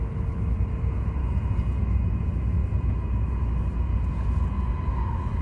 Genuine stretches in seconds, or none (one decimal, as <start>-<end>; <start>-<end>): 1.2-1.8; 3.9-4.9